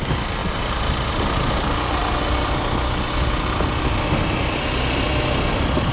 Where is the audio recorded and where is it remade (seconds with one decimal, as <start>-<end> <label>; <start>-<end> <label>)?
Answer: 0.0-5.9 recorded